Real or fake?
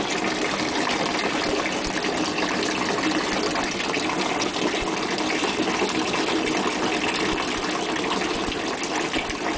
real